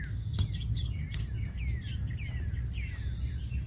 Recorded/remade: recorded